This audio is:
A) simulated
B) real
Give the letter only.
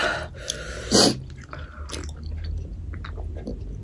B